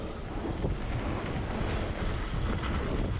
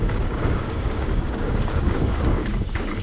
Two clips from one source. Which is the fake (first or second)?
second